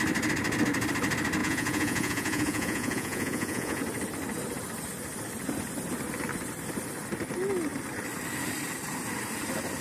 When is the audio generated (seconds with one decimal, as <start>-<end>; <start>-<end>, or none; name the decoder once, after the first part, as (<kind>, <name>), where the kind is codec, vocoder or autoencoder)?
1.4-3.8 (vocoder, Vocos)